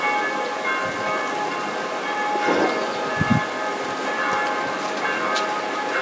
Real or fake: real